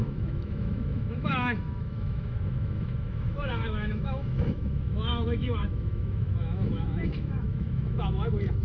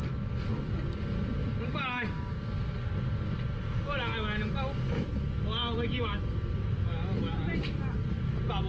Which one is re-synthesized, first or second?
first